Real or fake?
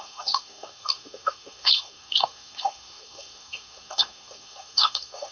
fake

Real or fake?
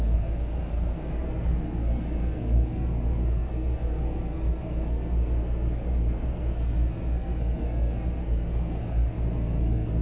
fake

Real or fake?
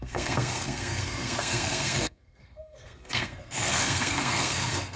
fake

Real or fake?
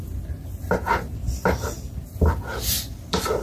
real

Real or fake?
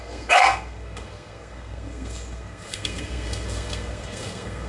fake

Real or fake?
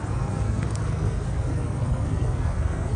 fake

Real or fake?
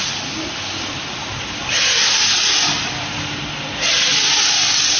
real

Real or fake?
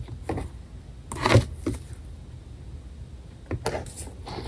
real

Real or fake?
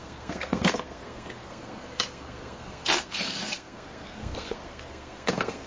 fake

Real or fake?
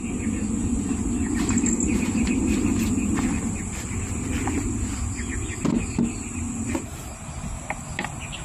real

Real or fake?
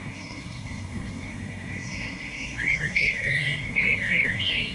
fake